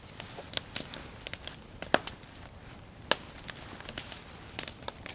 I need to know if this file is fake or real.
real